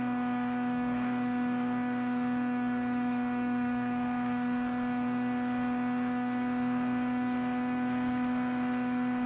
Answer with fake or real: fake